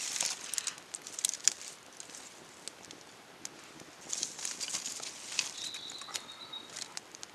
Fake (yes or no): no